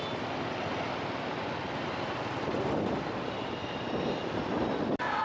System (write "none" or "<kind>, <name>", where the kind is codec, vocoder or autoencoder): none